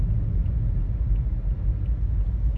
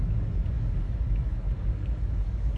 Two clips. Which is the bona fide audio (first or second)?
first